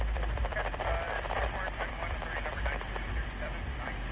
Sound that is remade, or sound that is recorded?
remade